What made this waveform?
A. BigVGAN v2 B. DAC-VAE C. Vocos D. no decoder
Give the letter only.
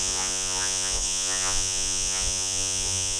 C